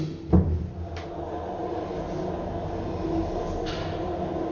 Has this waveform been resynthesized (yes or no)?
no